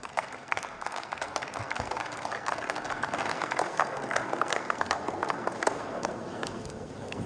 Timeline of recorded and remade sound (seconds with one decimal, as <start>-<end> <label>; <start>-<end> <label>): 0.0-7.3 remade